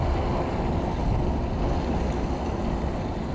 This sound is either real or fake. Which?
real